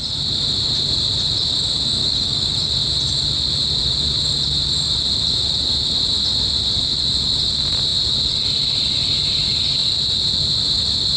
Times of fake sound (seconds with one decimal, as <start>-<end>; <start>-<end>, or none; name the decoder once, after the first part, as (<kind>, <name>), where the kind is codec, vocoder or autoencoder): 2.0-2.7 (codec, DAC)